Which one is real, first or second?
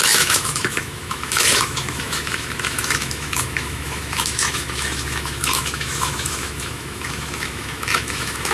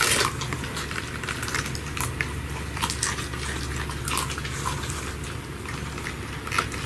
second